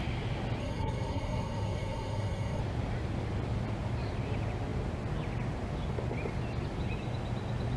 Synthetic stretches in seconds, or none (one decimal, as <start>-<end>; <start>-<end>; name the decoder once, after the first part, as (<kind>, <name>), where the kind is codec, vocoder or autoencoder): 0.6-2.6 (codec, SNAC)